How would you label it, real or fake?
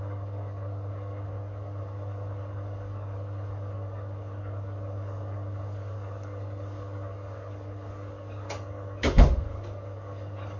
fake